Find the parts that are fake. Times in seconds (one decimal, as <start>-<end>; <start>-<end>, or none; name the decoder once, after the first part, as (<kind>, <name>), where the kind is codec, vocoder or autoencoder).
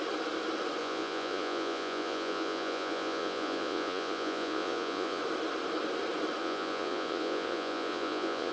0.8-5.2 (vocoder, Vocos); 6.4-8.5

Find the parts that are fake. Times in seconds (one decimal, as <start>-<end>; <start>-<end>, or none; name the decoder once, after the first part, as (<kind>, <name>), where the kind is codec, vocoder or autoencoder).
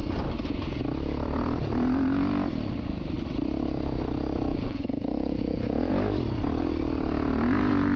4.5-5.9 (vocoder, Vocos)